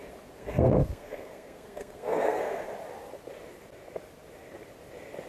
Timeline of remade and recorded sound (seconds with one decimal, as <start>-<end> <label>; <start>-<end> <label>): 0.0-0.4 recorded; 0.4-2.6 remade; 2.6-5.3 recorded